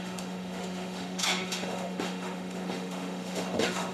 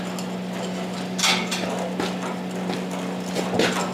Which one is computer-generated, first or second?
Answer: first